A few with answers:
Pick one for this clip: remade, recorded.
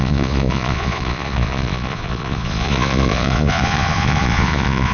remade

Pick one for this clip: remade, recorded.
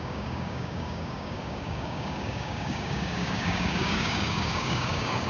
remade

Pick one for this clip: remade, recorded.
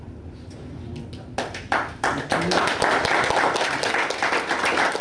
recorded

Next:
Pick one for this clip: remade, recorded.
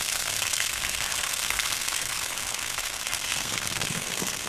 remade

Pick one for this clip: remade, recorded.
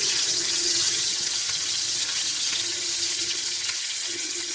remade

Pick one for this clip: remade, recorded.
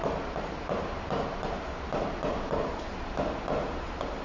remade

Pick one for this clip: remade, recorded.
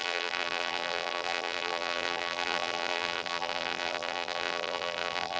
remade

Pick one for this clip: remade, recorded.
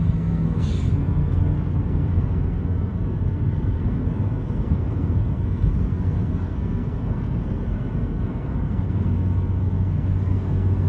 remade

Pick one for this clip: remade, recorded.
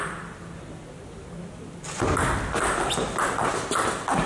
recorded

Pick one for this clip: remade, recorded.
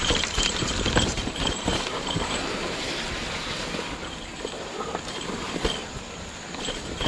remade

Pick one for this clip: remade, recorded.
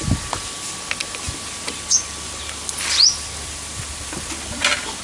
recorded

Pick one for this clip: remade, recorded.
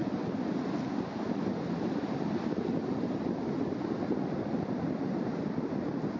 recorded